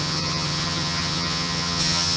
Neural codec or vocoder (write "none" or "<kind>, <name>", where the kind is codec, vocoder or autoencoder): vocoder, HiFi-GAN